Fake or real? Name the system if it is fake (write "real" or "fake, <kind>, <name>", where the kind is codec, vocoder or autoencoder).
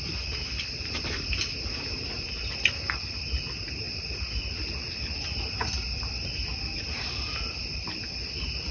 real